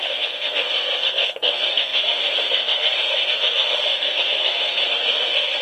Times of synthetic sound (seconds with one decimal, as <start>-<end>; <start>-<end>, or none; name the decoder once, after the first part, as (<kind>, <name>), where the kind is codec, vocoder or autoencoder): 0.0-5.6 (codec, SNAC)